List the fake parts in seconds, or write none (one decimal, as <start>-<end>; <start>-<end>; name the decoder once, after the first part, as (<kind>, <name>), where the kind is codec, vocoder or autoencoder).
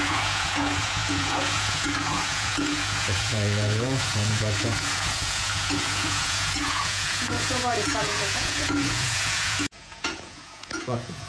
0.0-11.3 (vocoder, Vocos)